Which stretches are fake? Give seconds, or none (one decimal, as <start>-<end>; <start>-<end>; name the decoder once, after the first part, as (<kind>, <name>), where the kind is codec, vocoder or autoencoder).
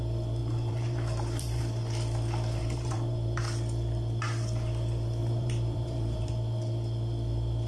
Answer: 0.4-1.6 (vocoder, BigVGAN v2); 2.6-3.4; 5.2-6.3